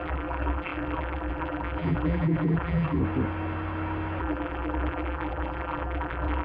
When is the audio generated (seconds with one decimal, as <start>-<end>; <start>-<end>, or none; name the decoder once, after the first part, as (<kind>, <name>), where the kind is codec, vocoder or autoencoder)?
0.0-3.0 (vocoder, BigVGAN v2); 4.2-6.4